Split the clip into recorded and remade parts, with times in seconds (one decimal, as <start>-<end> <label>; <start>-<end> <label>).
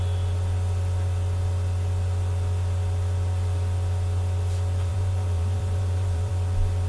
0.0-4.9 recorded; 4.9-6.3 remade; 6.3-6.9 recorded